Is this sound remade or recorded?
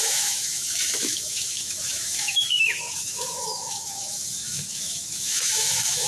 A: remade